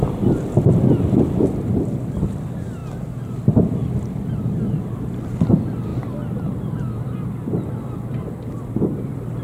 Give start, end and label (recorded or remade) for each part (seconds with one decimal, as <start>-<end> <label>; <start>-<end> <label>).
0.0-2.8 remade; 2.8-4.8 recorded; 4.8-9.4 remade